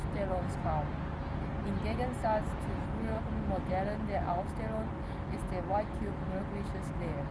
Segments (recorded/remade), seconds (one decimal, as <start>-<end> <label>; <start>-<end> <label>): 0.0-7.3 recorded